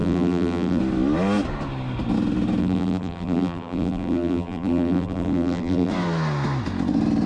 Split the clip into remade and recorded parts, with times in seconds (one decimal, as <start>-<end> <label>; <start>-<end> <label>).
0.0-0.8 remade; 0.8-2.6 recorded; 2.6-5.9 remade; 5.9-7.3 recorded

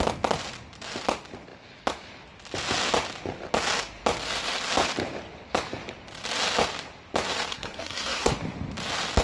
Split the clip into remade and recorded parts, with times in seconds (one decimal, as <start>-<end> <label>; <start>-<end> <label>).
0.0-7.5 recorded; 7.5-8.3 remade; 8.3-9.2 recorded

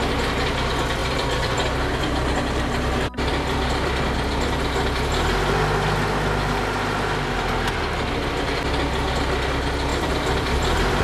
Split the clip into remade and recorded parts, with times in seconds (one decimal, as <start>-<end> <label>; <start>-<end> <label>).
0.0-1.0 recorded; 1.0-4.0 remade; 4.0-9.9 recorded; 9.9-11.0 remade

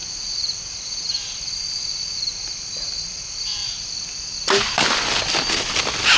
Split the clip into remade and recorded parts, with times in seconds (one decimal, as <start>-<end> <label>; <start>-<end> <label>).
0.0-6.2 recorded

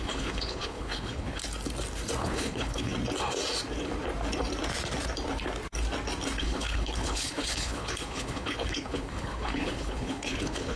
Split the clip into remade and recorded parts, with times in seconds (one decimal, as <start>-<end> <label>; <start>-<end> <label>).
0.0-1.4 remade; 1.4-2.2 recorded; 2.2-2.9 remade; 2.9-6.4 recorded; 6.4-10.8 remade